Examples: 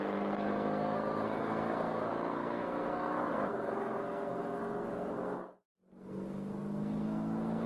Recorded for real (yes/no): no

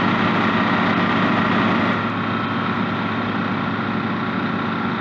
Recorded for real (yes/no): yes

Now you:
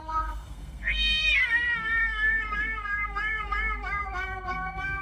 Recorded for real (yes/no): no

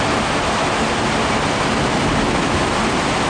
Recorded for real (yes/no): yes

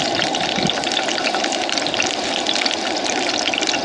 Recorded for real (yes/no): yes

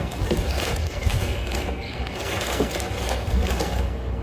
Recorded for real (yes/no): no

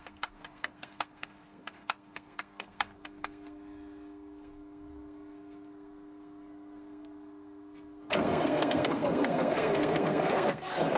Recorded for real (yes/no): no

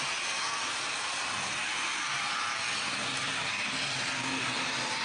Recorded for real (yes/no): yes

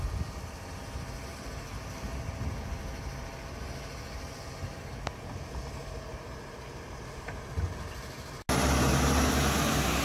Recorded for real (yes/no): yes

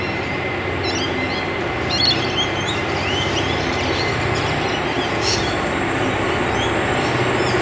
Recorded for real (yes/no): yes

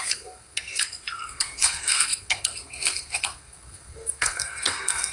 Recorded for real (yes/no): no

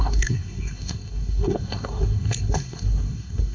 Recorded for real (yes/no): no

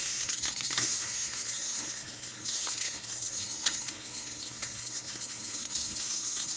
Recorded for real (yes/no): no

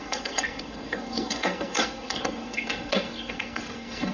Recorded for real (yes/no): no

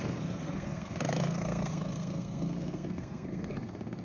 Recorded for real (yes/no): no